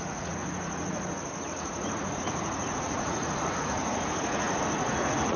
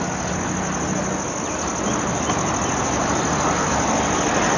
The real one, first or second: second